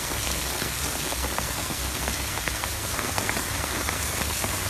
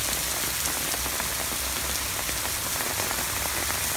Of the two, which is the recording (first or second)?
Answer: second